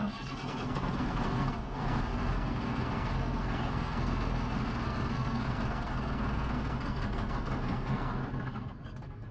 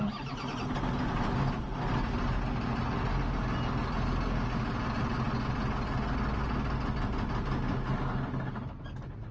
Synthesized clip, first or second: first